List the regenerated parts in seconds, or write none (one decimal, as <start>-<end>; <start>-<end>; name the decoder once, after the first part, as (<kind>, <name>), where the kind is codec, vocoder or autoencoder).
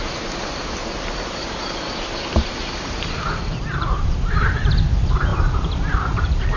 0.8-4.3 (vocoder, BigVGAN v2); 5.3-6.6